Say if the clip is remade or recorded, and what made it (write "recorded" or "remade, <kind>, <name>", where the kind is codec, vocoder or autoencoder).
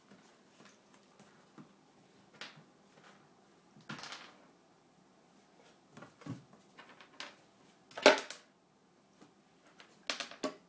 recorded